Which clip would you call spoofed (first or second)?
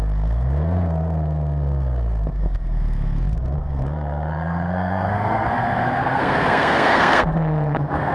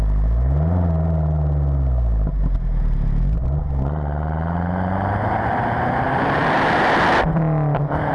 first